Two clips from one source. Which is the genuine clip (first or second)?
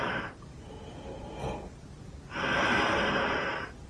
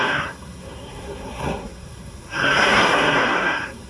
first